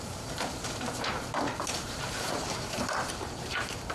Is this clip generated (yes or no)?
yes